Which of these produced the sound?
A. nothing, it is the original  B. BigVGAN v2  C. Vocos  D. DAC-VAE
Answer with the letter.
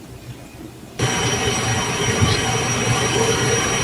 B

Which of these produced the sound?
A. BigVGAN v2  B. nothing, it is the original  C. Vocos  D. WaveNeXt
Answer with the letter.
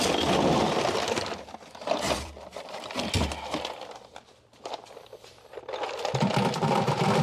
A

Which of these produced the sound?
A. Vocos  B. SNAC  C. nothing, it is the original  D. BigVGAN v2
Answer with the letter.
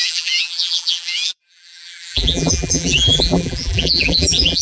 D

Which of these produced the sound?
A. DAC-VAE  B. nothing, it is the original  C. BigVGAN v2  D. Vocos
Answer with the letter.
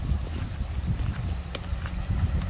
B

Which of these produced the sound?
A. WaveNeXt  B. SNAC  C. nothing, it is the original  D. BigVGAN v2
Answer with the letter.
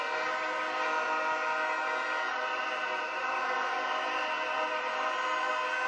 C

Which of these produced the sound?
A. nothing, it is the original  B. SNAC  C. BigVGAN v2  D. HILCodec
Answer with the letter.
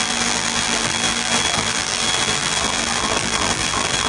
C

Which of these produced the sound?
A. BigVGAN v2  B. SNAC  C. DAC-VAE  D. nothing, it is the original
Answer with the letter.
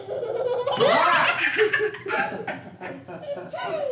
D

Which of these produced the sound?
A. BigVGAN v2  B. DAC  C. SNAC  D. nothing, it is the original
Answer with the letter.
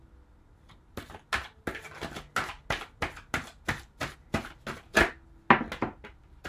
D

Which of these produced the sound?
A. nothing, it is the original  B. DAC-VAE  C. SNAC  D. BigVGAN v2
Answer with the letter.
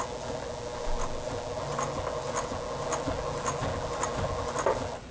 A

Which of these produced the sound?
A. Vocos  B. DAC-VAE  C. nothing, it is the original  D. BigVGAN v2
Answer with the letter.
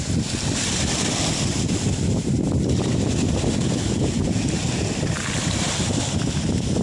C